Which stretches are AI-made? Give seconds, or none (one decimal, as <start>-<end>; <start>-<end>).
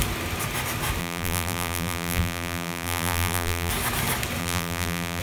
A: 1.0-3.7; 4.4-5.2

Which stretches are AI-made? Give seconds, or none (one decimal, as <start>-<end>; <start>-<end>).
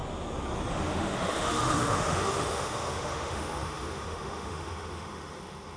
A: 0.7-5.8